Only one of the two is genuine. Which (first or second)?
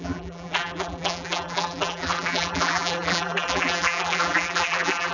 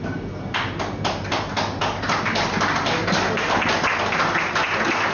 second